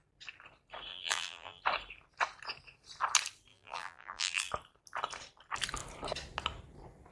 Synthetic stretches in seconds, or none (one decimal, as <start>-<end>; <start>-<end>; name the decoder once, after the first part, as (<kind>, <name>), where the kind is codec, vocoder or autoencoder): 0.9-1.6 (vocoder, BigVGAN v2); 3.5-4.5